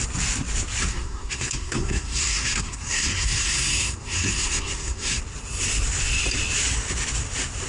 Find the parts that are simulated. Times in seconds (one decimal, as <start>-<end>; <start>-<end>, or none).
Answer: 0.9-5.2